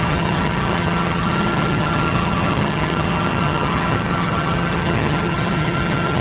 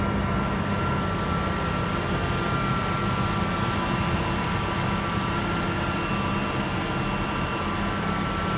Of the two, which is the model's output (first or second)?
first